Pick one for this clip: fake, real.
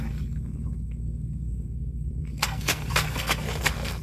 fake